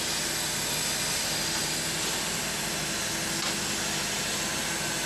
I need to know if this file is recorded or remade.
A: recorded